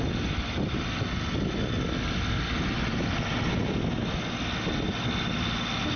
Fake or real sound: real